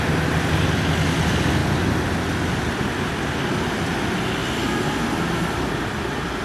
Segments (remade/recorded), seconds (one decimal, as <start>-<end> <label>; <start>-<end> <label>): 0.0-6.4 recorded